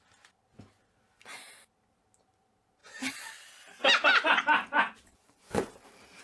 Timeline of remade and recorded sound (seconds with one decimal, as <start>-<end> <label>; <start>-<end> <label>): 0.0-2.8 recorded; 2.8-3.3 remade; 3.3-5.2 recorded; 5.2-5.7 remade; 5.7-6.2 recorded